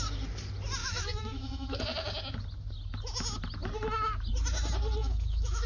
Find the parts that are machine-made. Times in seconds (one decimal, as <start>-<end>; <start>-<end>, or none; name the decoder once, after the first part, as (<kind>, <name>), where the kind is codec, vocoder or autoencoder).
0.8-1.8 (autoencoder, DAC-VAE); 5.0-5.7